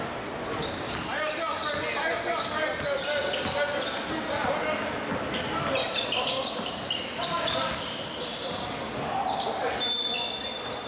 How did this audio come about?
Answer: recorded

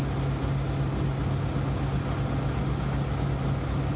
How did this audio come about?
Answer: recorded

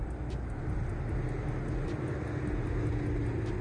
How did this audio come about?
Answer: recorded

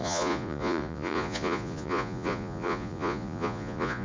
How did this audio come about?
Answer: remade